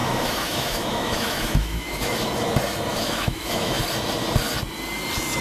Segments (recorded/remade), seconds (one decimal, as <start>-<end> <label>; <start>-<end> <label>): 0.0-2.3 remade; 2.3-2.9 recorded; 2.9-3.8 remade; 3.8-5.4 recorded